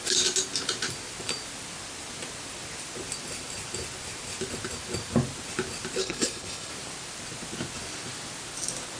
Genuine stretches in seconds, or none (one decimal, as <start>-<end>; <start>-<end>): 0.0-6.0; 6.7-9.0